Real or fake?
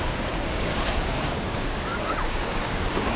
fake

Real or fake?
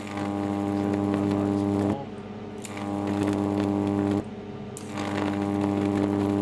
real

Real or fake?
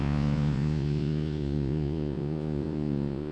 fake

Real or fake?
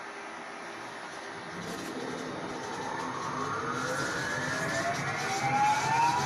real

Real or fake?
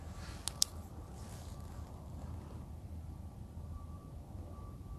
real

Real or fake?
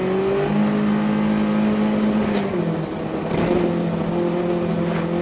real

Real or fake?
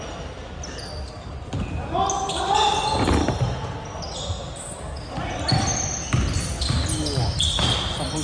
real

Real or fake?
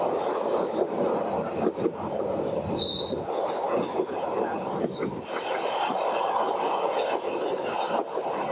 real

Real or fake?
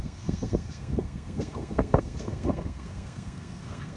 fake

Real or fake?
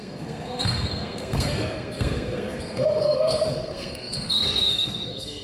fake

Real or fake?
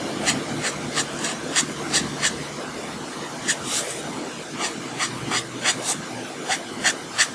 real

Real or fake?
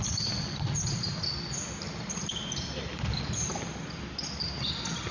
real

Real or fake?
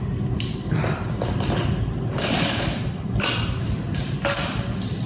real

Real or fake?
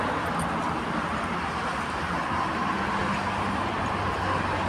real